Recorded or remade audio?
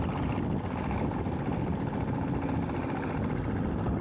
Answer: recorded